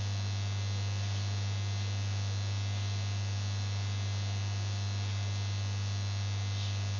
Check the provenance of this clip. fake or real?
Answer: real